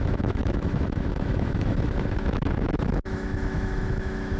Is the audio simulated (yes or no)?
yes